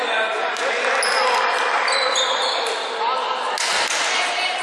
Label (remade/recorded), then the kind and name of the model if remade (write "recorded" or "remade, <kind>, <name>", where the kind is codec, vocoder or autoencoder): recorded